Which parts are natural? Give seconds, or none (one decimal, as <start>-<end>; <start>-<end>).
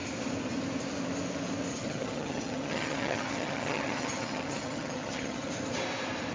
0.0-1.7; 5.5-6.3